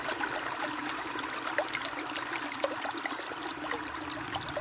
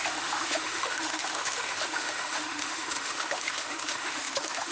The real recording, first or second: first